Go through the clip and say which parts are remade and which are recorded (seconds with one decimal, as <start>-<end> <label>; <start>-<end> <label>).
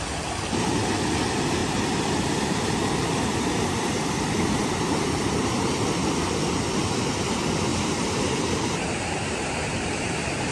0.0-1.6 recorded; 1.6-5.6 remade; 5.6-7.7 recorded; 7.7-10.5 remade